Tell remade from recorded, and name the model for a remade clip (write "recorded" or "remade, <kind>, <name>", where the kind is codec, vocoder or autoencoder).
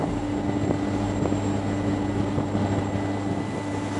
recorded